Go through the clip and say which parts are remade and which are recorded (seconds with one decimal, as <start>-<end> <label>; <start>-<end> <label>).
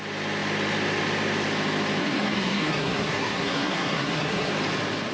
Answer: 0.0-2.0 recorded; 2.0-4.5 remade; 4.5-5.1 recorded